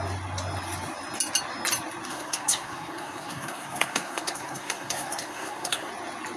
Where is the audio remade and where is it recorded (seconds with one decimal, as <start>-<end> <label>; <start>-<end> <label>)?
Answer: 0.0-2.1 recorded; 2.1-5.9 remade; 5.9-6.4 recorded